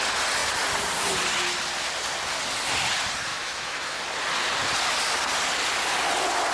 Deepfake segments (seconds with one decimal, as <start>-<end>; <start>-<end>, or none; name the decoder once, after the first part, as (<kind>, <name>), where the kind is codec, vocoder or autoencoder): 3.3-4.0 (autoencoder, DAC-VAE)